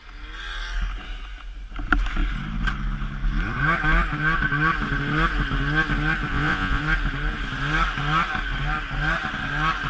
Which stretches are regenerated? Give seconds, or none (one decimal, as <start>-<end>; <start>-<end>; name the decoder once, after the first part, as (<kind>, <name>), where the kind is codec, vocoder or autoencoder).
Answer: 6.3-6.8 (vocoder, Vocos)